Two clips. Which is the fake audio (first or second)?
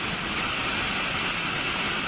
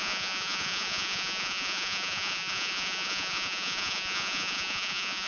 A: second